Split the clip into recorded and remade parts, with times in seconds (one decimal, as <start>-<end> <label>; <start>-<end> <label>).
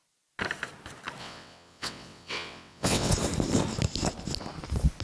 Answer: 0.0-1.2 recorded; 1.2-3.1 remade; 3.1-5.0 recorded